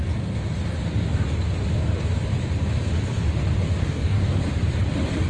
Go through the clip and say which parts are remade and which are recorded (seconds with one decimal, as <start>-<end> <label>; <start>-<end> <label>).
0.0-3.8 recorded; 3.8-4.4 remade; 4.4-5.3 recorded